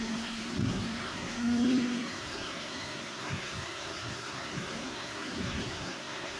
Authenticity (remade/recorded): remade